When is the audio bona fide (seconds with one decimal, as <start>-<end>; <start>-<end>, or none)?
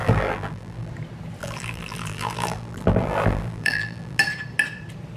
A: 0.9-1.4; 4.2-5.2